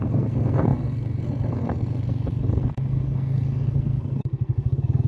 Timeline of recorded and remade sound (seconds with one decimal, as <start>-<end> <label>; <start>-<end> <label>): 0.0-5.1 remade